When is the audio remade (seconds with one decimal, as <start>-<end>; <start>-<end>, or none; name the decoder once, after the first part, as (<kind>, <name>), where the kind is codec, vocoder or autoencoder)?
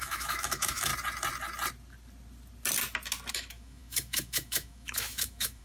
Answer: 0.0-0.9 (autoencoder, DAC-VAE); 3.3-5.6